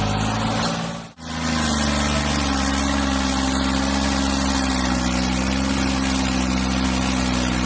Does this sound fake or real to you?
real